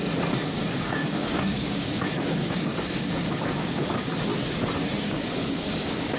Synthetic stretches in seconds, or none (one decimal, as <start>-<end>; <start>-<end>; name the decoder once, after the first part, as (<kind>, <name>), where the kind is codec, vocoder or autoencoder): 0.8-4.3 (codec, DAC); 5.0-6.2